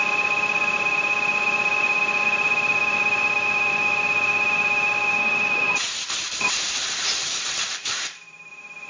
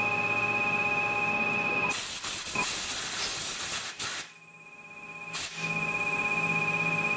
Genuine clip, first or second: second